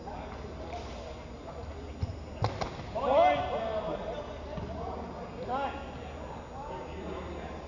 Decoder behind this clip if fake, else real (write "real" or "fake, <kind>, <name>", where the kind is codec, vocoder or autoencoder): real